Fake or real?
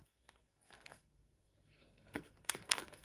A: fake